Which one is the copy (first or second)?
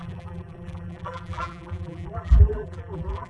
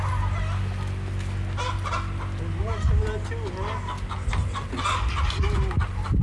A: first